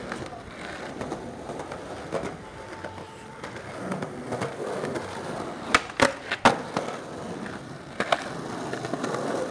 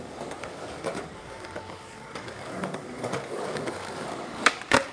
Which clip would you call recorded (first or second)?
first